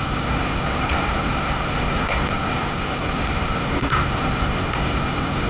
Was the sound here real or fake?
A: fake